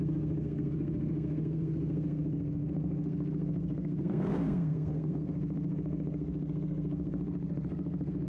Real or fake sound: fake